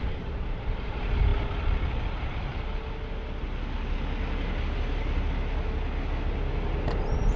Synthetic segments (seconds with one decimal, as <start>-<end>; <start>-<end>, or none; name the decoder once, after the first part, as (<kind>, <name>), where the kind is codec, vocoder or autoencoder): 0.0-1.3 (vocoder, BigVGAN v2); 1.9-2.5; 6.9-7.4